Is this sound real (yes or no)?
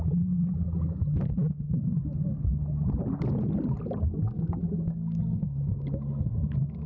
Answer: yes